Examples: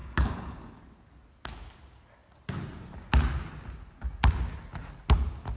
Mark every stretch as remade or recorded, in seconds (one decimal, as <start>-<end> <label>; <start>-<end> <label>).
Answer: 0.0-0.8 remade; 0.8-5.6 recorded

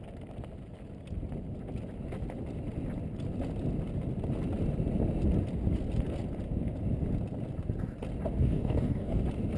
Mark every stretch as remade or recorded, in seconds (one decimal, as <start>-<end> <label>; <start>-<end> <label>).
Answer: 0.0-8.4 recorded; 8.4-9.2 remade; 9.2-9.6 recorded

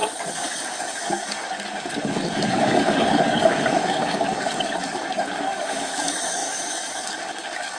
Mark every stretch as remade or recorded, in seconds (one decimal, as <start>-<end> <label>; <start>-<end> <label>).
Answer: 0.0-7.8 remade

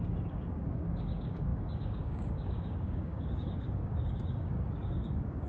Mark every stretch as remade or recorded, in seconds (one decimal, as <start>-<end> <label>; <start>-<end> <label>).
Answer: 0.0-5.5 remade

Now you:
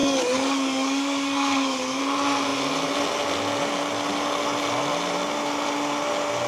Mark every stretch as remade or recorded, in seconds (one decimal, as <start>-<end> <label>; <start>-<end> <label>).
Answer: 0.0-2.0 remade; 2.0-6.5 recorded

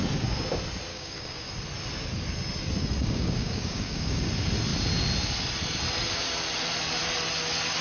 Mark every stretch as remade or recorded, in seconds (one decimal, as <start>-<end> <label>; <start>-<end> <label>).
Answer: 0.0-0.9 recorded; 0.9-1.5 remade; 1.5-3.0 recorded; 3.0-4.2 remade; 4.2-7.8 recorded

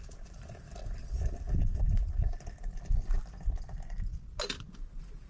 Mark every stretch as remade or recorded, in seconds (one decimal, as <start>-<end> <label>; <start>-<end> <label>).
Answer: 0.0-5.3 recorded